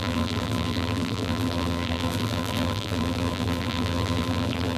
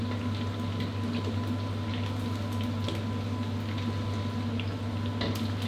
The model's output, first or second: first